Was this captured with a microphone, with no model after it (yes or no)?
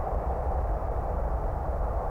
no